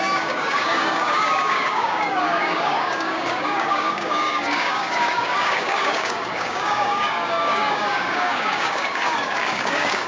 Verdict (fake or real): fake